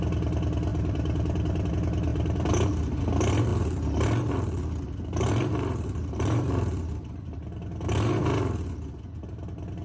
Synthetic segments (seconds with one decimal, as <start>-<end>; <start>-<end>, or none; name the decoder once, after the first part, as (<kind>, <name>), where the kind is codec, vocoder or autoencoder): 0.7-1.7 (vocoder, BigVGAN v2); 2.1-2.7; 3.5-8.4